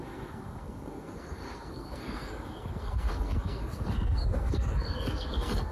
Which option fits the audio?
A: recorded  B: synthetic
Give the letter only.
B